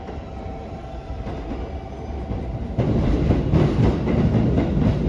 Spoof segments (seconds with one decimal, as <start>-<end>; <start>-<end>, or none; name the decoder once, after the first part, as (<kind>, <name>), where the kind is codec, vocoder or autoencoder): none